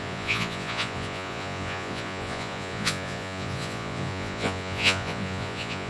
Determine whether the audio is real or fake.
fake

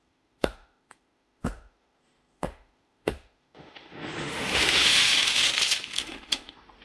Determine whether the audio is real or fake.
fake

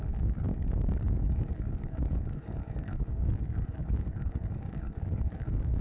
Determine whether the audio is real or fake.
fake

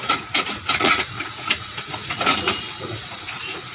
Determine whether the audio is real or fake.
fake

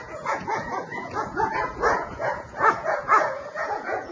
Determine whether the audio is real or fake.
fake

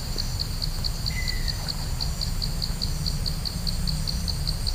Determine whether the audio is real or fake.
real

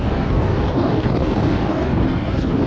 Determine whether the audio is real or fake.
fake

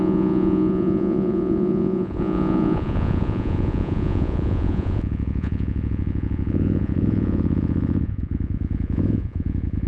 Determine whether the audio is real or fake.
fake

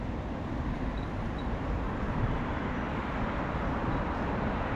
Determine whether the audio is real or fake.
real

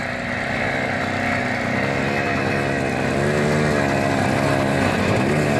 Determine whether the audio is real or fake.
real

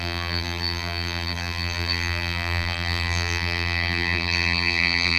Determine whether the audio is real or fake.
fake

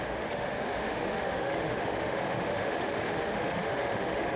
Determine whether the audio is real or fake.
fake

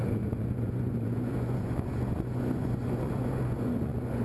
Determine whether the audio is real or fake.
fake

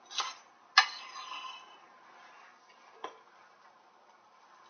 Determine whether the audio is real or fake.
real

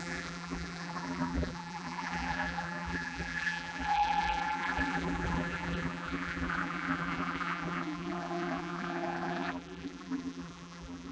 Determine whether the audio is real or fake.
fake